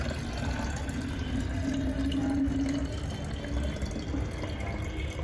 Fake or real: real